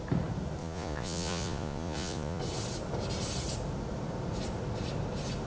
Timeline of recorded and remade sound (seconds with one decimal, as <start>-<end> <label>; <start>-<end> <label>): 0.0-0.6 recorded; 0.6-2.4 remade; 2.4-5.5 recorded